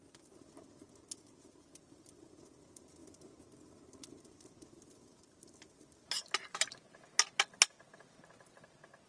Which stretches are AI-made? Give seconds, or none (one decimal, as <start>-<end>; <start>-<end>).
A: none